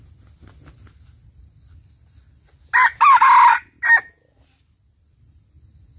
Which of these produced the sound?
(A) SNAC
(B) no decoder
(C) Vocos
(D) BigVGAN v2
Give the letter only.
B